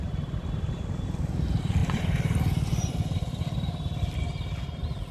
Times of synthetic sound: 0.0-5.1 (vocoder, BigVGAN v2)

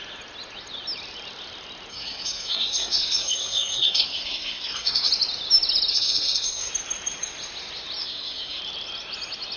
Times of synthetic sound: 1.9-5.1 (codec, SNAC); 5.9-6.7; 8.0-8.6